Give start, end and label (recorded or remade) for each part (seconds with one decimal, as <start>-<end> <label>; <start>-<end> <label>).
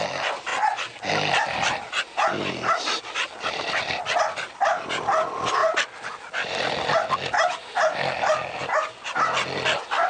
0.0-10.1 recorded